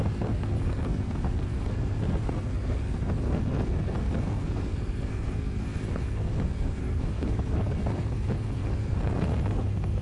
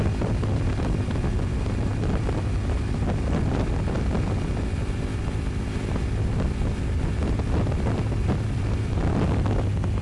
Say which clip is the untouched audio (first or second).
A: second